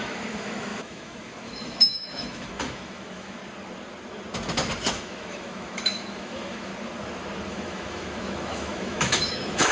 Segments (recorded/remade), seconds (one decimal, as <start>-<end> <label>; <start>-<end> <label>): 0.0-3.4 remade; 3.4-4.9 recorded; 4.9-6.7 remade; 6.7-7.5 recorded; 7.5-9.7 remade